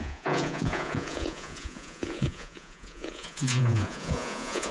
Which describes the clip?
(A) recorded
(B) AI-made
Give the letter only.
B